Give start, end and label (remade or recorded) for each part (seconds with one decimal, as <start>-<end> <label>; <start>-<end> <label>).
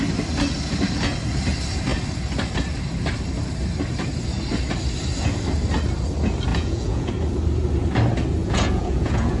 0.0-6.5 recorded; 6.5-7.1 remade; 7.1-8.4 recorded; 8.4-9.4 remade